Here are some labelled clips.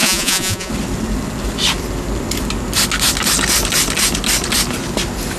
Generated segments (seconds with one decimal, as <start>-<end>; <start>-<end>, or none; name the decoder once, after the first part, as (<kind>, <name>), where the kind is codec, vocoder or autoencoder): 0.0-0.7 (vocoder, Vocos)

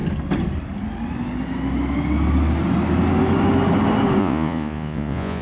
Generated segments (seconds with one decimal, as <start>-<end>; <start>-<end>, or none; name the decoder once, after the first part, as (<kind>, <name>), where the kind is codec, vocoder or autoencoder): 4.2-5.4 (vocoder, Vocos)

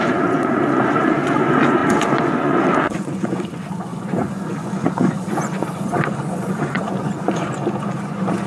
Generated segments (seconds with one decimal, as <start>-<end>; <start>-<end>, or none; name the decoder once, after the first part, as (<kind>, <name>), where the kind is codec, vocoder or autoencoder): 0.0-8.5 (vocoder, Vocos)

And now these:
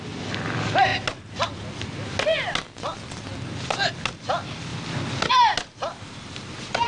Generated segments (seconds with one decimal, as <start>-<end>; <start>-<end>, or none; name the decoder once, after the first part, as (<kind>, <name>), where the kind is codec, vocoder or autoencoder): none

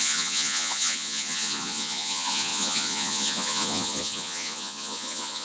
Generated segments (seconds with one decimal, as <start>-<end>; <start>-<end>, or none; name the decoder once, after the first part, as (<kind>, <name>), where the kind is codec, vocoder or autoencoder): 0.0-5.4 (vocoder, Vocos)

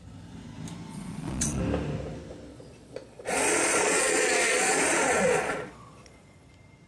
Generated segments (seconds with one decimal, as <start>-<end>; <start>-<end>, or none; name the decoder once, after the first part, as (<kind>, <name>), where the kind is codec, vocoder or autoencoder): 0.9-1.6 (vocoder, Vocos); 2.5-6.5

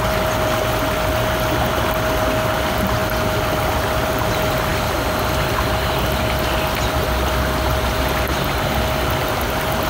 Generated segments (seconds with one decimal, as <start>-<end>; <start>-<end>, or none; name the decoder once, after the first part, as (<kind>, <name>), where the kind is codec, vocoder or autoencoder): none

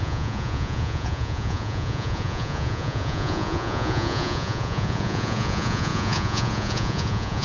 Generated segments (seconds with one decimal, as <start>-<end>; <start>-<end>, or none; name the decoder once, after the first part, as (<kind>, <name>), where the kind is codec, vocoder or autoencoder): 0.0-7.4 (vocoder, Vocos)